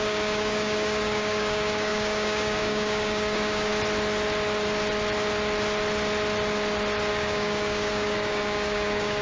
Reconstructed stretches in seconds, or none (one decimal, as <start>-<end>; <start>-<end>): 0.0-3.7; 7.1-9.2